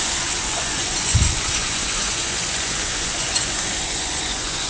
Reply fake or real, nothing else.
fake